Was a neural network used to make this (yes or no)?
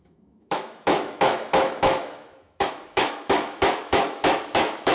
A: yes